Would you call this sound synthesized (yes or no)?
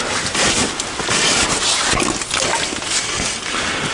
no